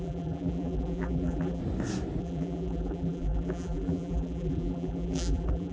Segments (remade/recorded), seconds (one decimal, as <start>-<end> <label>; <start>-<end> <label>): 0.0-1.6 remade; 1.6-2.2 recorded; 2.2-5.7 remade